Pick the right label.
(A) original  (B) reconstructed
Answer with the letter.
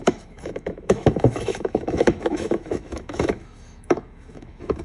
B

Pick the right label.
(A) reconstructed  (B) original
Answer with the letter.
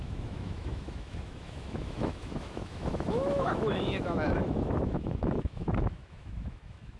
A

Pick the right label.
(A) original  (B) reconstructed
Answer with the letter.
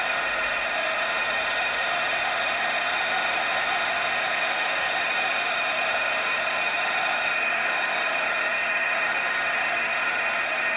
B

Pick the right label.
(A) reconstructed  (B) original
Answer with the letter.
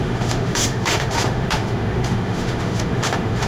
A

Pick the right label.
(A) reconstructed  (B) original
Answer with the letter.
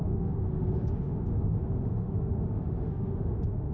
A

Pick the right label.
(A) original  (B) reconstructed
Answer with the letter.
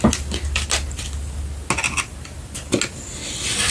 A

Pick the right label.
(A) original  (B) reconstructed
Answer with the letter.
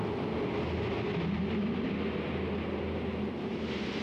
A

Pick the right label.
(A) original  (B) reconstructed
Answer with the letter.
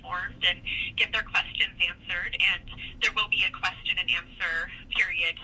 B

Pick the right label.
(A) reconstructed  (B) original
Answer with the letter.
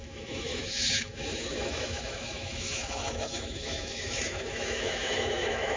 A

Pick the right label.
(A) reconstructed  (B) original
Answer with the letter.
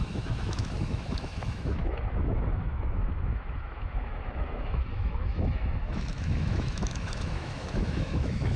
A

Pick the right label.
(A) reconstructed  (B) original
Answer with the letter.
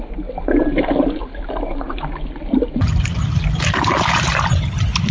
B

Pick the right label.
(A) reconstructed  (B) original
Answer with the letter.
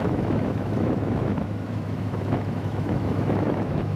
A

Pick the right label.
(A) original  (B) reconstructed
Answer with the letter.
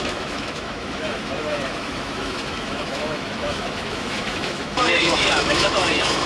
B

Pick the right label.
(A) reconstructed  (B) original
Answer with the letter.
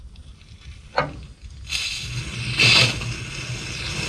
B